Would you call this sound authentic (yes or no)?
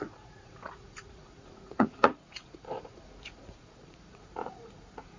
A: no